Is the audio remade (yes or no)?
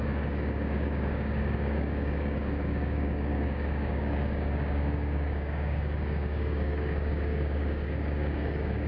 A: yes